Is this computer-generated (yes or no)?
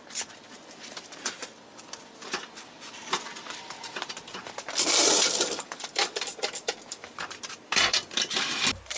yes